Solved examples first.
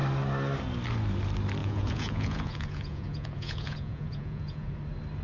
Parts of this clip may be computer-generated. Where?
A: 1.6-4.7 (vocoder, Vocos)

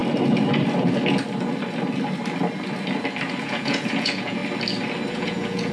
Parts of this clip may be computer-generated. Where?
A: 3.4-4.4 (vocoder, Vocos); 5.1-5.7

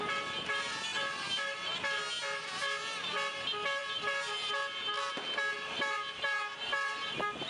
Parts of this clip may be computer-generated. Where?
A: none